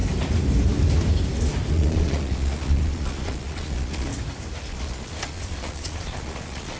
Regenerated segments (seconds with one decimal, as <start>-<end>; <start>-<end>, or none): 1.7-4.1; 4.7-6.8